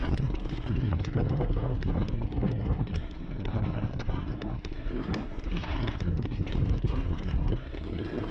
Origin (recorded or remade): remade